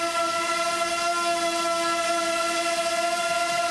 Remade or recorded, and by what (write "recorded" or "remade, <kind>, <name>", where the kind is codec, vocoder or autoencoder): recorded